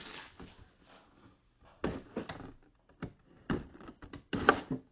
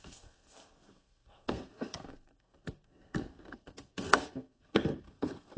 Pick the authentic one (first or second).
first